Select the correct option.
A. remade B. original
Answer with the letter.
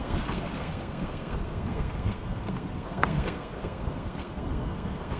A